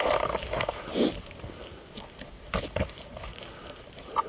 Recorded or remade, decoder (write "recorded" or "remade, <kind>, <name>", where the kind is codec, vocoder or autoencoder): recorded